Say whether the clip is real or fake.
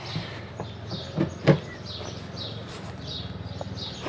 real